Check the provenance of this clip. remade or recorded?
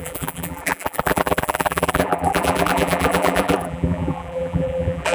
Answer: remade